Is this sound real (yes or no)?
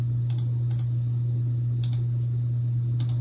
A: yes